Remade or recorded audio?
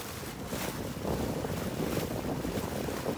recorded